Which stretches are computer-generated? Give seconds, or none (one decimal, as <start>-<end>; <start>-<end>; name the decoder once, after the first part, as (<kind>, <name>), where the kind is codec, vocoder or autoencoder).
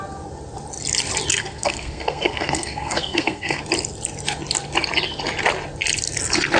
1.3-3.6 (codec, SNAC)